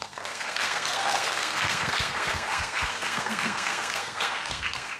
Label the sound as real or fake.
fake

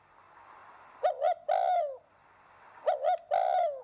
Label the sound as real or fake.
real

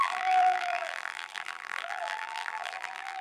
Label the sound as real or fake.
fake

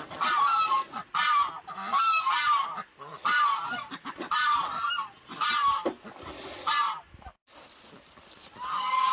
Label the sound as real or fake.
real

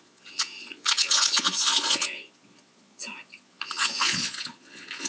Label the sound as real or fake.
fake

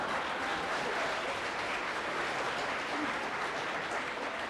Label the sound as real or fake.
real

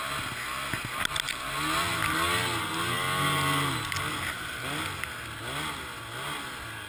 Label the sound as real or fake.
real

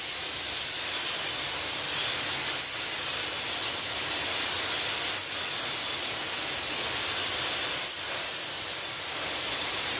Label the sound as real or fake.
real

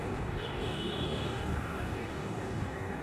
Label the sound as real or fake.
fake